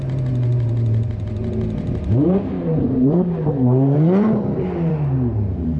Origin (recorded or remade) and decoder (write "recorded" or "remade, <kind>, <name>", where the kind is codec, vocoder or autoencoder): remade, vocoder, BigVGAN v2